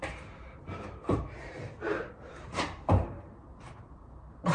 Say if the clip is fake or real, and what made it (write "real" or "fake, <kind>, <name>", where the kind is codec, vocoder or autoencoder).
fake, vocoder, BigVGAN v2